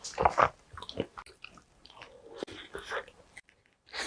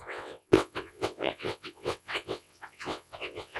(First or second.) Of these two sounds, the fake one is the second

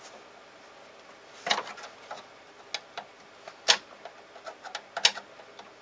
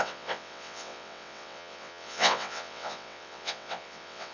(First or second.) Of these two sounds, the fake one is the second